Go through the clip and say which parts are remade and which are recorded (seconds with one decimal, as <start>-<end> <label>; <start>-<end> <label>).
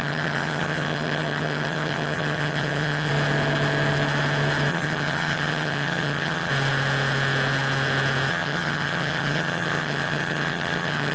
0.0-3.1 remade; 3.1-4.7 recorded; 4.7-6.5 remade; 6.5-8.3 recorded; 8.3-11.1 remade